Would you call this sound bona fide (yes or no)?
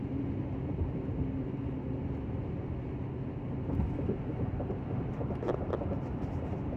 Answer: yes